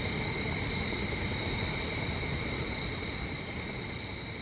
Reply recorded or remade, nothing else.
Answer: recorded